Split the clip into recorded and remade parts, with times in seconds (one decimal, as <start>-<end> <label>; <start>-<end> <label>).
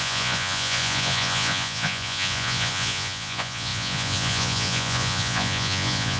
0.0-6.2 remade